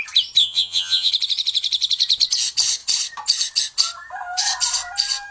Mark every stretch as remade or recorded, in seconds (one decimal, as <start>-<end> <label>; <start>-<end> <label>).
0.0-0.4 recorded; 0.4-1.1 remade; 1.1-5.3 recorded